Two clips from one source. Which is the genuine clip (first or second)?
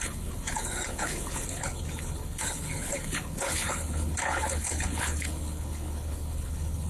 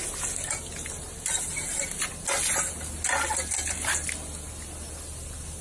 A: second